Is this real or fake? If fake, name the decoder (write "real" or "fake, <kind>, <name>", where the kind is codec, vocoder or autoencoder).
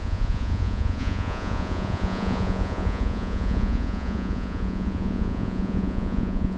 fake, vocoder, Vocos